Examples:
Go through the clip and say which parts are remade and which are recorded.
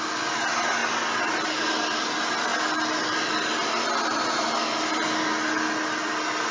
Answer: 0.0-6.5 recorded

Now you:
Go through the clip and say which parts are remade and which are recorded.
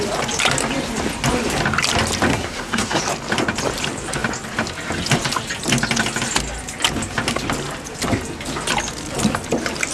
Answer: 0.0-2.3 recorded; 2.3-3.0 remade; 3.0-9.9 recorded